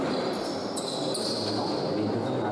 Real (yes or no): yes